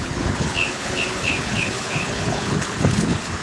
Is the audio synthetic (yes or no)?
yes